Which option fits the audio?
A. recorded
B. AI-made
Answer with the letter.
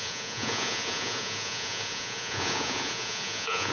B